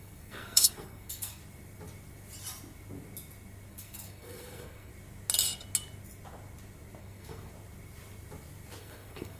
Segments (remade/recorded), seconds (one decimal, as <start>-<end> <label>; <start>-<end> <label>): 0.0-1.4 remade; 1.4-3.7 recorded; 3.7-4.9 remade; 4.9-7.0 recorded; 7.0-7.5 remade; 7.5-8.8 recorded; 8.8-9.4 remade